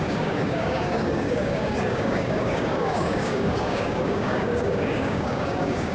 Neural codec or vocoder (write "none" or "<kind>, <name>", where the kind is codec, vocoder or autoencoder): codec, DAC